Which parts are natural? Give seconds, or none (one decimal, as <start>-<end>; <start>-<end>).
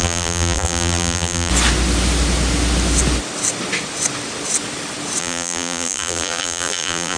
1.5-5.2